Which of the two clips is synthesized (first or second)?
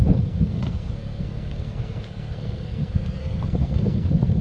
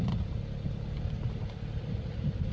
first